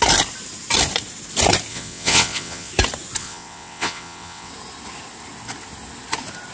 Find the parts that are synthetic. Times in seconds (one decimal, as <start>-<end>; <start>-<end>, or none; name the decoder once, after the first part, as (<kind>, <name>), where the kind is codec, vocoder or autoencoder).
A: 1.7-2.7 (vocoder, WaveNeXt); 3.2-4.5